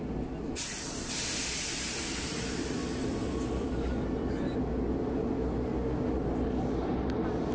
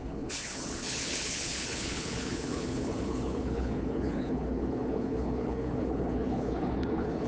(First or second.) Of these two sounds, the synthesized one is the second